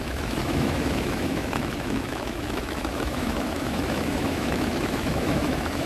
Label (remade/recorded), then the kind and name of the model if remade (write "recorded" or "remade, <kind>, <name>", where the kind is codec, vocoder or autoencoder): remade, autoencoder, DAC-VAE